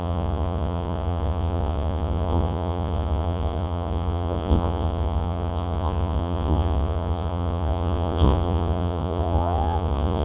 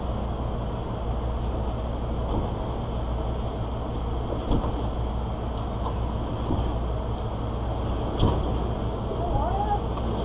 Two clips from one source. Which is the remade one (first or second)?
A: first